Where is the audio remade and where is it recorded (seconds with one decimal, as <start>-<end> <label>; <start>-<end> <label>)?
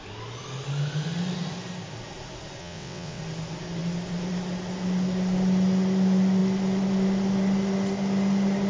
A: 0.0-2.6 recorded; 2.6-3.2 remade; 3.2-8.7 recorded